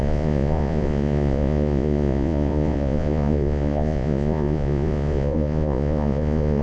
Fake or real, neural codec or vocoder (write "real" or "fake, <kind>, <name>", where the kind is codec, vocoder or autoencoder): fake, vocoder, Vocos